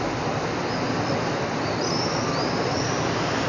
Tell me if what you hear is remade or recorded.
recorded